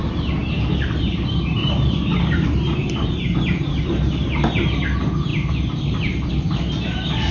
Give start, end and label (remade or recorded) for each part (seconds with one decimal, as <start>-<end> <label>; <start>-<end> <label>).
0.0-0.4 recorded; 0.4-4.8 remade; 4.8-5.3 recorded; 5.3-6.3 remade; 6.3-7.3 recorded